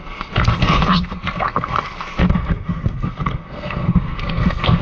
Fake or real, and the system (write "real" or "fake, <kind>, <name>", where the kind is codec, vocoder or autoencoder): fake, codec, SNAC